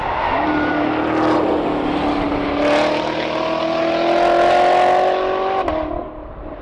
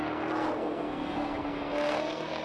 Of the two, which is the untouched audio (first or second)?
first